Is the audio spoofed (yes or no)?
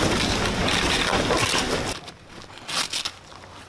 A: no